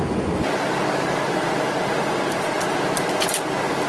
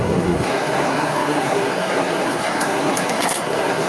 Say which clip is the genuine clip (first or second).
first